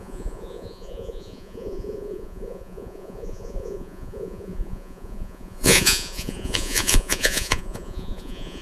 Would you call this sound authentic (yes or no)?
no